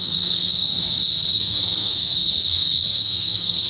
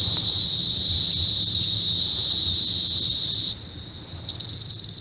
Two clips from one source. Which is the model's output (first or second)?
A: first